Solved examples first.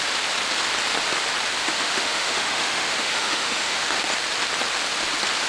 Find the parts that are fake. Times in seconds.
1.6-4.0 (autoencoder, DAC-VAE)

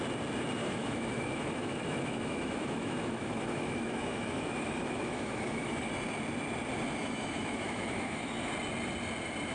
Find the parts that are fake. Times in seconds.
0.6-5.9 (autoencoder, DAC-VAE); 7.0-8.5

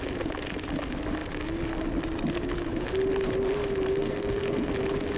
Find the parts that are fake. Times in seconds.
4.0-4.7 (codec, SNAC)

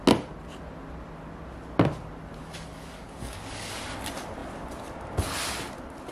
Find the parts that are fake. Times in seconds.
2.4-3.7 (codec, DAC)

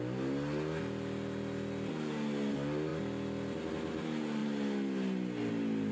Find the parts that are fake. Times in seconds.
none

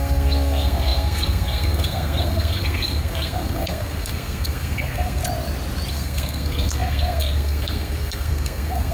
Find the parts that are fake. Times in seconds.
0.0-5.2 (codec, SNAC); 5.9-8.9